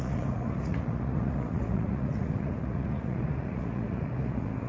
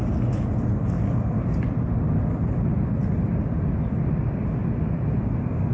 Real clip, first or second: second